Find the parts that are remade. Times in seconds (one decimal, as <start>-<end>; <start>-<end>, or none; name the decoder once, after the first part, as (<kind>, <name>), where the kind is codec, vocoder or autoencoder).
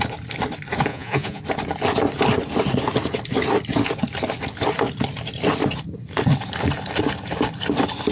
0.9-1.4 (vocoder, Vocos)